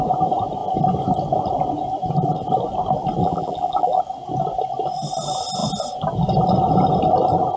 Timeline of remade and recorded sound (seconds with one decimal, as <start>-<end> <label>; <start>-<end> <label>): 0.0-3.2 recorded; 3.2-4.0 remade; 4.0-7.6 recorded